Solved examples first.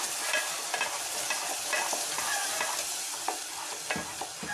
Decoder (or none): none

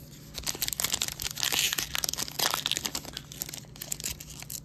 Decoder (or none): none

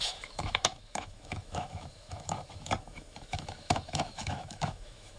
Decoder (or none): autoencoder, DAC-VAE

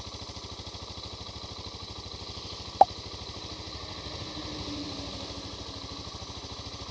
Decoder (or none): none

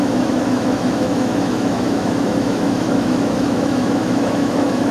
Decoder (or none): autoencoder, DAC-VAE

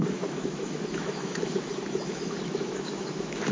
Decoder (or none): autoencoder, DAC-VAE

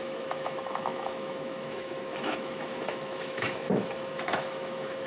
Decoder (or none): autoencoder, DAC-VAE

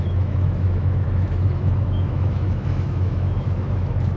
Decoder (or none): autoencoder, DAC-VAE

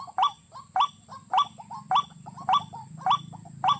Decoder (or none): none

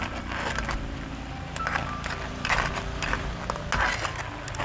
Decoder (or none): none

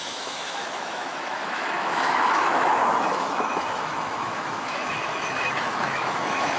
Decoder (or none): autoencoder, DAC-VAE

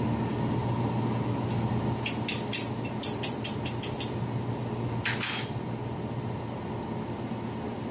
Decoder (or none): none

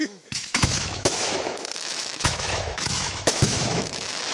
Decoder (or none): autoencoder, DAC-VAE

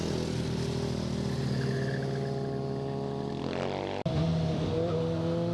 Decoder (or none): none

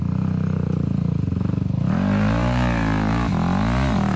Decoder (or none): none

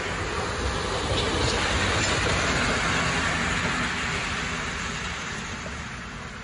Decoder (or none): none